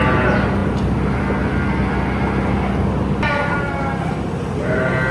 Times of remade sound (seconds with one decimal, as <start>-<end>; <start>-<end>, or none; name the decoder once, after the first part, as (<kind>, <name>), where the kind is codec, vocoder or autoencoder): none